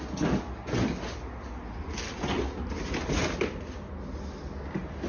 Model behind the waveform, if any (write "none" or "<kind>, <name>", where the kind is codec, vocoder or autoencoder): none